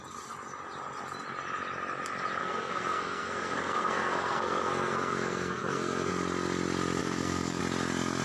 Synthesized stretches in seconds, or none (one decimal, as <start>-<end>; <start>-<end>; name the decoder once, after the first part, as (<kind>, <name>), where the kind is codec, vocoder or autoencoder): 2.4-6.1 (codec, SNAC); 7.0-7.6